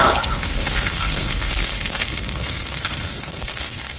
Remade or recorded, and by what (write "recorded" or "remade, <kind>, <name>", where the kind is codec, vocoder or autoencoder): remade, codec, SNAC